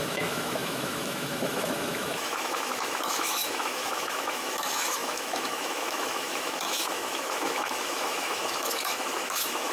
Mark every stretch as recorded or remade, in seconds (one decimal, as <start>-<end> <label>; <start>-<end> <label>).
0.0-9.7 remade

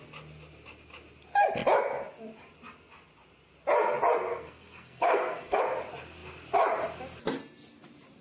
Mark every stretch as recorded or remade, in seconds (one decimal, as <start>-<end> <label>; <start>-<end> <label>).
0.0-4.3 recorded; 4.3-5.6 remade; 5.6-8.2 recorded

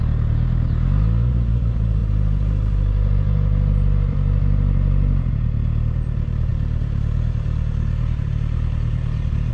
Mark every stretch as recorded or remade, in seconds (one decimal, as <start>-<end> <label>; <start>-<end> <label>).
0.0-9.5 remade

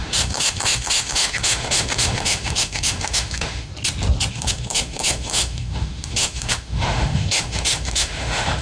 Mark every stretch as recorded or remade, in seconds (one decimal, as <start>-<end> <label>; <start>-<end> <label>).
0.0-3.7 remade; 3.7-4.3 recorded; 4.3-8.6 remade

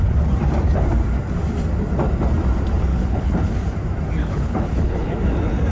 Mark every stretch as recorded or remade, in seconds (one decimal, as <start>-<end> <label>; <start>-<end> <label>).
0.0-2.9 recorded; 2.9-3.5 remade; 3.5-4.2 recorded; 4.2-5.1 remade; 5.1-5.7 recorded

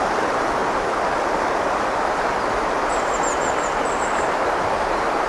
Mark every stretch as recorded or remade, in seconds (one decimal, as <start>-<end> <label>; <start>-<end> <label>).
0.0-5.3 remade